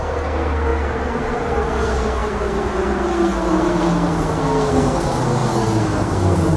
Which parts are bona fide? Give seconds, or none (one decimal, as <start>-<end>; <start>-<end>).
none